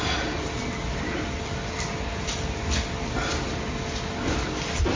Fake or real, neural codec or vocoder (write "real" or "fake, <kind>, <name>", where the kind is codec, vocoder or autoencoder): real